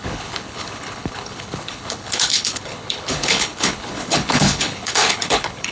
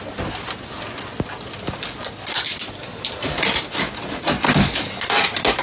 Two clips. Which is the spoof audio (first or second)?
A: first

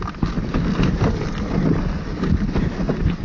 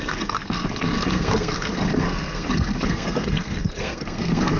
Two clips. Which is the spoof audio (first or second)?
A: second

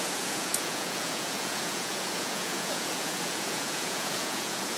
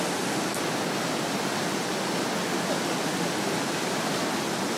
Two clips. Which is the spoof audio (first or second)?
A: first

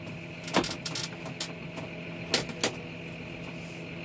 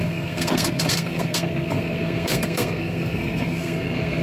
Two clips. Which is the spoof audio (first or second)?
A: second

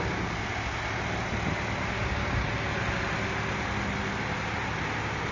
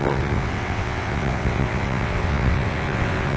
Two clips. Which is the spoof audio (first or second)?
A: second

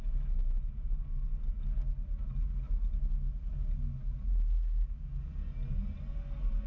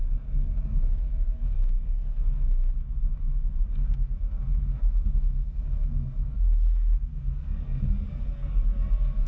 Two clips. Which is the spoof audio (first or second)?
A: second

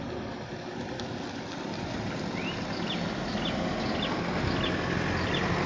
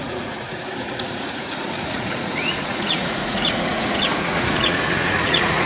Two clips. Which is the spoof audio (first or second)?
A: second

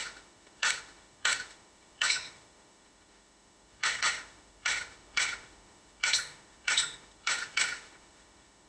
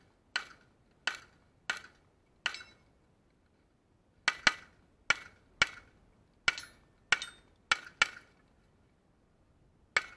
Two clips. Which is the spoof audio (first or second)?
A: first